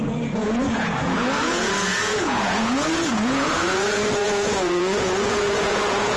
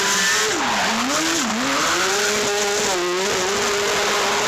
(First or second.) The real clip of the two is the second